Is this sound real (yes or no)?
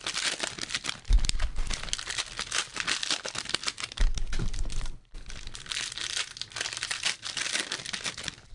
yes